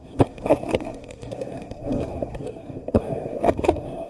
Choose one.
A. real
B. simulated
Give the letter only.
B